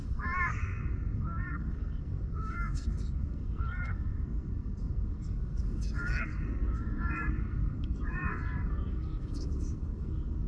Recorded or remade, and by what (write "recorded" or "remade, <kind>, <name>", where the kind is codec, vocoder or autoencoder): remade, codec, SNAC